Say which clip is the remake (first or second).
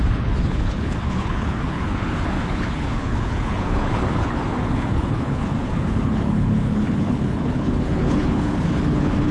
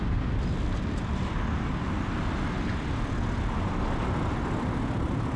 first